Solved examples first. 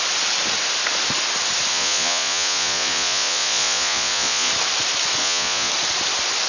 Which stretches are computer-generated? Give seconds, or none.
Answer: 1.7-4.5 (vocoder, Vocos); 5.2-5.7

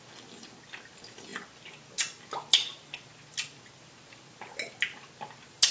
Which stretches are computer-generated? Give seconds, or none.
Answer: none

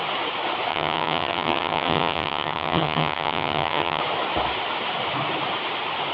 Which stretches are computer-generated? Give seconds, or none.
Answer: 0.7-4.0 (vocoder, HiFi-GAN)

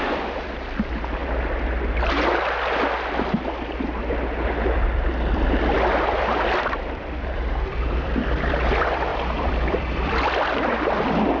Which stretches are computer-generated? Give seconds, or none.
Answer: 0.0-1.2 (vocoder, BigVGAN v2); 6.1-11.4

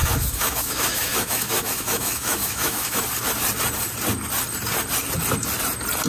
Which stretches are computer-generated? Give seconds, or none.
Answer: 0.0-3.0 (autoencoder, DAC-VAE)

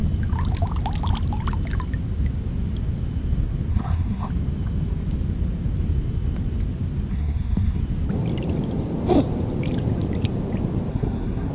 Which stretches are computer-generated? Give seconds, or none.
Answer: 3.7-4.3 (codec, SNAC); 7.1-7.8; 10.9-11.5